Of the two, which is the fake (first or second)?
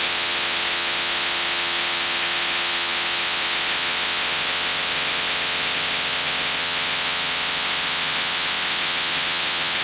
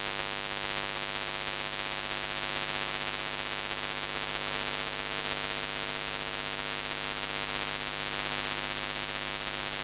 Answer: first